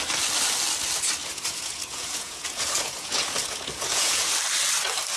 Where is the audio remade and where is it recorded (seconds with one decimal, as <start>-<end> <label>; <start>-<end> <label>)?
0.0-1.2 recorded; 1.2-4.3 remade; 4.3-5.2 recorded